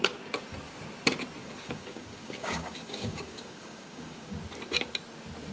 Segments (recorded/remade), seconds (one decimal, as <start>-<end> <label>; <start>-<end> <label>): 0.0-1.4 recorded; 1.4-4.4 remade; 4.4-5.5 recorded